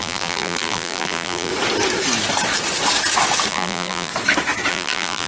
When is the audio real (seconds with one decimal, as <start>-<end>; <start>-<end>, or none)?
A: 1.5-3.5; 4.1-4.7